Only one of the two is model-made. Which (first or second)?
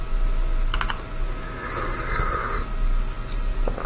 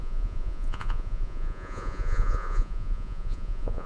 second